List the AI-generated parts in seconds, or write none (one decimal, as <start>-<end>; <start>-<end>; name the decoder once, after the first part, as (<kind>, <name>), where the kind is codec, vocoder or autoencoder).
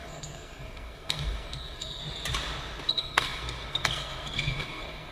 0.0-2.0 (codec, SNAC); 2.9-5.1